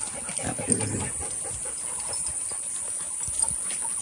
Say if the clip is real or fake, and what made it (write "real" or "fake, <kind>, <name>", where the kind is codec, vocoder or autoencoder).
real